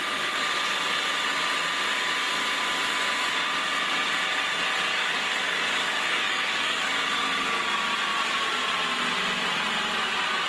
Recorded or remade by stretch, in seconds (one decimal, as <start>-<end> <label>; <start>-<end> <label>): 0.0-4.9 recorded; 4.9-6.9 remade; 6.9-10.5 recorded